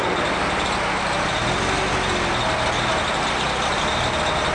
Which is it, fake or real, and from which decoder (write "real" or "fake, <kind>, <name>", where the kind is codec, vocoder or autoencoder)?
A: real